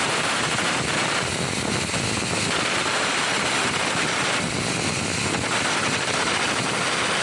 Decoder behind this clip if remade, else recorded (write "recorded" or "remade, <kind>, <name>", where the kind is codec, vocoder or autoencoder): recorded